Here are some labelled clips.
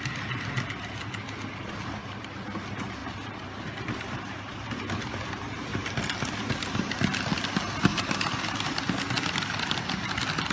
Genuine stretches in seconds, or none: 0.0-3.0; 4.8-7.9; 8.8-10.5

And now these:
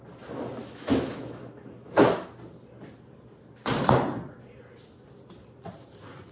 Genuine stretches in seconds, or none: 0.0-0.6; 2.3-6.3

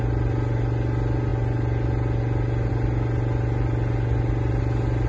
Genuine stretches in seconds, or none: 0.0-5.1

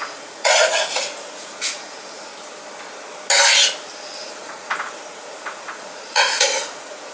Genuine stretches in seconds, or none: 2.3-4.2

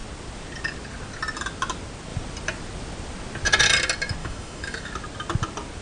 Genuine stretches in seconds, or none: 0.0-4.2; 4.9-5.8

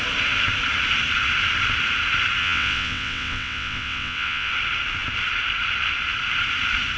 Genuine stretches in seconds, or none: 0.0-2.4; 4.5-7.0

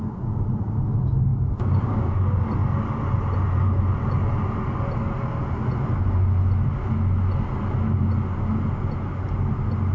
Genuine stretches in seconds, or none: 0.0-1.3; 2.1-9.9

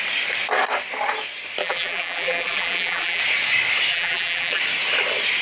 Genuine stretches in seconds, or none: 0.0-1.6; 3.2-3.9; 4.6-5.4